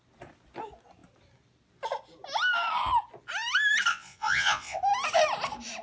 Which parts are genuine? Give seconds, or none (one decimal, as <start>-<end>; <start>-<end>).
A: 0.0-3.9; 4.8-5.8